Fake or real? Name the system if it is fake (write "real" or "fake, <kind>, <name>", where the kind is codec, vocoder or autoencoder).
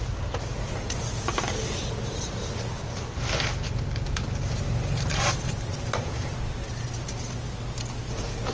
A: real